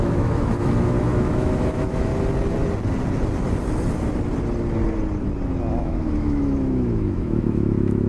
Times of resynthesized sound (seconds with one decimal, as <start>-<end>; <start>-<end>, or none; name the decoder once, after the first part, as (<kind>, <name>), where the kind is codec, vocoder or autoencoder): 0.0-2.1 (autoencoder, DAC-VAE); 5.8-8.1